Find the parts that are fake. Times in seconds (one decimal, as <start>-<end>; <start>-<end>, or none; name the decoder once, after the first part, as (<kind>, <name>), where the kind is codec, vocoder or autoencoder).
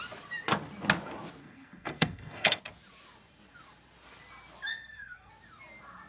1.4-2.6 (codec, SNAC); 4.7-5.3